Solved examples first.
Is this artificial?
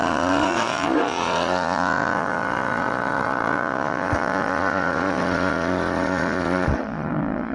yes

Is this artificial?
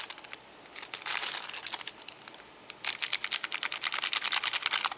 no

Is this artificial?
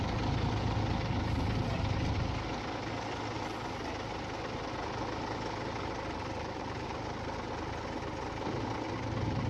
no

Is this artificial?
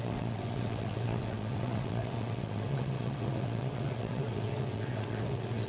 yes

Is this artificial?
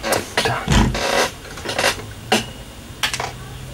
no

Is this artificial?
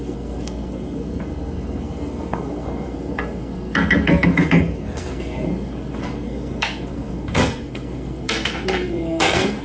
yes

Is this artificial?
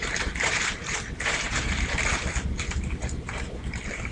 yes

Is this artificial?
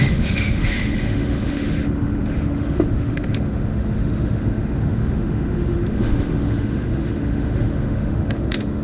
yes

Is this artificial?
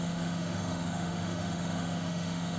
yes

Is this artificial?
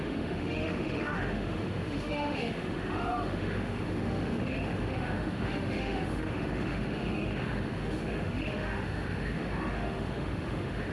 yes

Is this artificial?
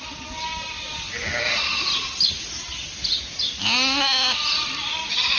no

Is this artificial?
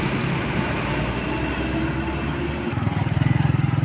no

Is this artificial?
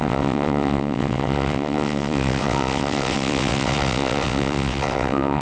yes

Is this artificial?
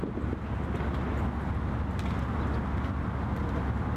no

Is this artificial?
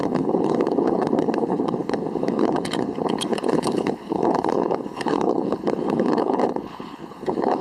yes